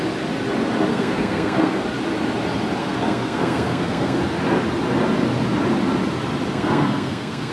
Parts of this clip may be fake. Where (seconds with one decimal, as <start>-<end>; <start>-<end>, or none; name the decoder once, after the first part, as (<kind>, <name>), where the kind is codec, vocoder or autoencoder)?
0.9-1.8 (codec, SNAC); 2.8-4.2; 6.5-7.5